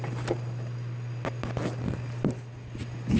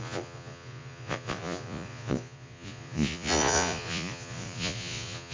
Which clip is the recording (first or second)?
first